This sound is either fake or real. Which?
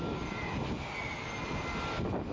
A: real